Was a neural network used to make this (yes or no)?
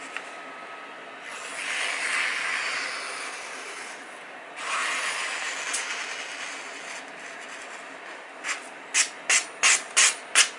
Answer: no